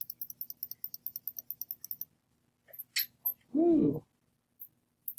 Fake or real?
real